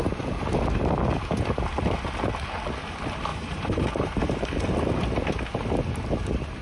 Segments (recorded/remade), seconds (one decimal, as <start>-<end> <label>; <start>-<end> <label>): 0.0-3.3 recorded; 3.3-4.5 remade; 4.5-6.6 recorded